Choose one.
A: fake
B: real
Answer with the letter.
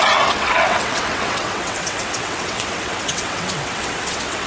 A